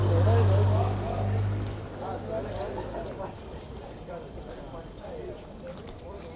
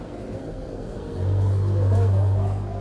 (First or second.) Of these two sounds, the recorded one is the first